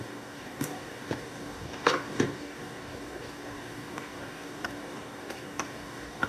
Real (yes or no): no